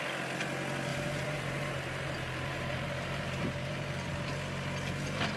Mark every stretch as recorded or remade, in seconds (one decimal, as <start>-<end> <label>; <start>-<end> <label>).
0.0-0.9 recorded; 0.9-4.1 remade; 4.1-5.4 recorded